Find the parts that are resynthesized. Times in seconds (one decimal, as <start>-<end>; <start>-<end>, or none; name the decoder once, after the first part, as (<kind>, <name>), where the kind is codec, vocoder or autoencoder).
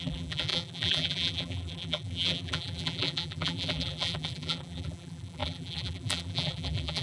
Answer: 0.0-7.0 (vocoder, BigVGAN v2)